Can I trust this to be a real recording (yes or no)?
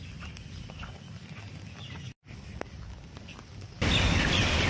yes